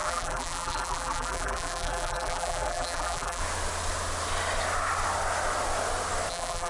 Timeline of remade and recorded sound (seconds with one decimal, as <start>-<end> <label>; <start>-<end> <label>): 0.0-3.4 remade; 3.4-6.3 recorded; 6.3-6.7 remade